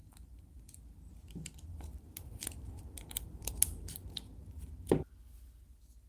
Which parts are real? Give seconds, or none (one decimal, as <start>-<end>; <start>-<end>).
0.7-1.7; 3.5-6.1